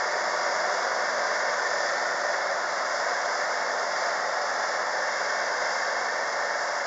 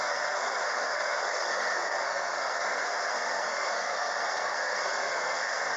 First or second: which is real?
first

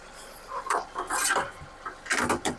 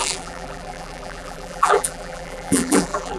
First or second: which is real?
first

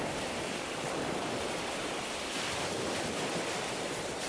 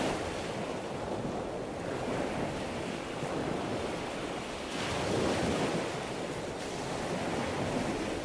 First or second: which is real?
second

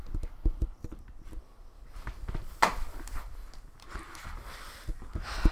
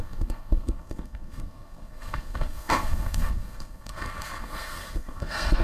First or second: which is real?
first